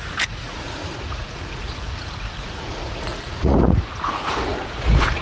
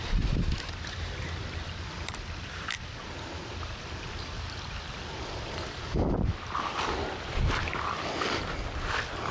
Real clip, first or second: second